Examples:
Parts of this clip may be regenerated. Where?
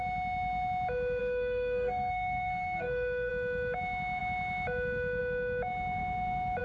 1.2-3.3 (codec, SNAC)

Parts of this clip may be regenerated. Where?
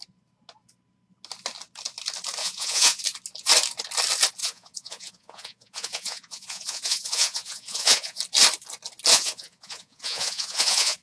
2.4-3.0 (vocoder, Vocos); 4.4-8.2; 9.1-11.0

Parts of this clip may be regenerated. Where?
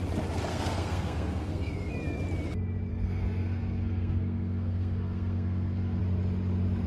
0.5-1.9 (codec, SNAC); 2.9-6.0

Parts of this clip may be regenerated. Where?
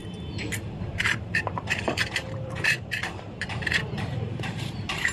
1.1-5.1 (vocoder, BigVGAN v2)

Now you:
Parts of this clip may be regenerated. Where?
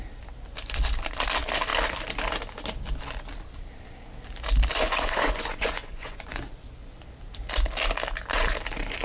4.7-6.4 (vocoder, Vocos)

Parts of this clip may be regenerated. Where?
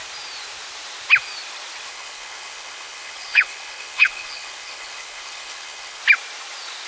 1.9-6.0 (codec, HILCodec)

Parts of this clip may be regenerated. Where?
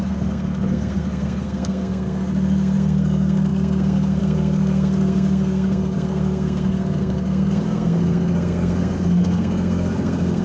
0.0-10.4 (codec, SNAC)